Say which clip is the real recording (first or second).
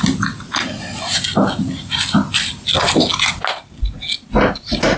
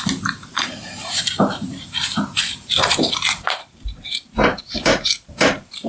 first